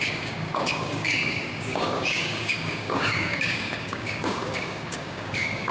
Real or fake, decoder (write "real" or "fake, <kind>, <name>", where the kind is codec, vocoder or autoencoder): fake, codec, DAC